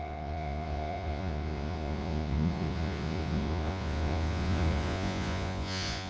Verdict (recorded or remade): remade